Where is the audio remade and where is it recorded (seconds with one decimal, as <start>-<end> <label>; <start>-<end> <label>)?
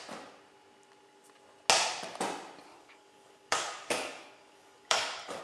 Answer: 0.0-2.7 recorded; 2.7-5.4 remade